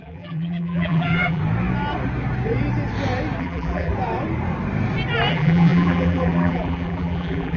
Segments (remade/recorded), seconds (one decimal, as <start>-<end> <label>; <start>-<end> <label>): 0.0-1.4 remade; 1.4-3.4 recorded; 3.4-3.9 remade; 3.9-5.3 recorded; 5.3-7.6 remade